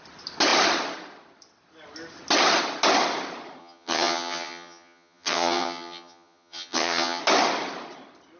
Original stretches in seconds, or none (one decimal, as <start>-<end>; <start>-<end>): 0.0-3.6; 7.2-8.4